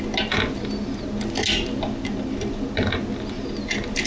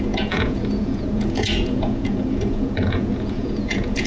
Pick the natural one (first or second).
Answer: first